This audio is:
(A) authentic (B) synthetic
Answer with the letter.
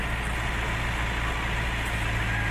A